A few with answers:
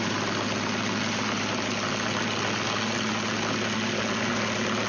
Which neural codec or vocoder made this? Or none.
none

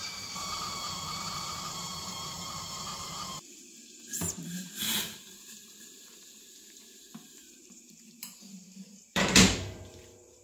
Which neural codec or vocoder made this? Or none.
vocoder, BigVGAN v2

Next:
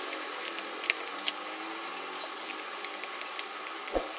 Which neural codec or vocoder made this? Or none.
none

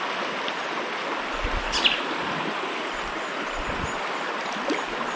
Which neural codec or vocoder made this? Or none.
none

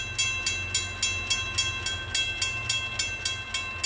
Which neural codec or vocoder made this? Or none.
none